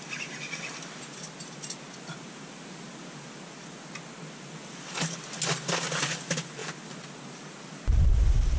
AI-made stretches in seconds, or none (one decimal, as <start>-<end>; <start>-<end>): none